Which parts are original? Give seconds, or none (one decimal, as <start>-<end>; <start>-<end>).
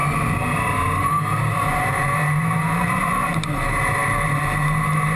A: none